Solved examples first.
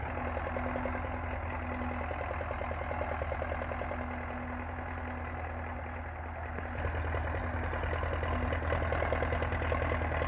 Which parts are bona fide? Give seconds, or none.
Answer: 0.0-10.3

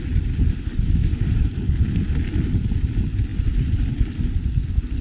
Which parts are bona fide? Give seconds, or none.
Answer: 0.0-0.5; 1.5-5.0

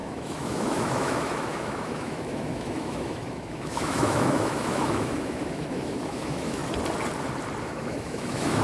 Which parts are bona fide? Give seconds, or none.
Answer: 6.6-7.6

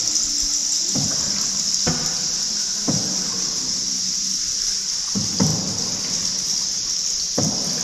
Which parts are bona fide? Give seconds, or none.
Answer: 0.0-7.8

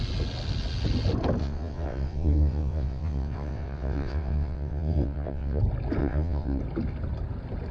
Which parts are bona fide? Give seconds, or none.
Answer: 0.0-1.4; 5.6-6.0; 6.6-7.7

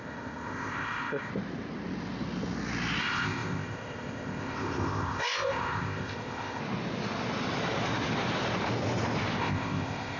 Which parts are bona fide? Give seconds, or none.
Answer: 1.3-3.0; 6.6-9.4

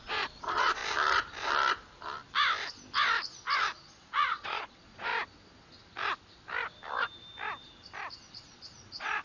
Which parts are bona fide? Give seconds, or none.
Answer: 0.8-3.8; 5.1-8.3

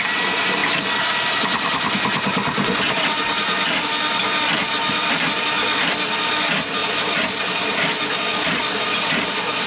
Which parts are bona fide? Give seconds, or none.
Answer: 0.0-9.7